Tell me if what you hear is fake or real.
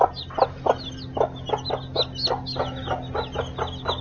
real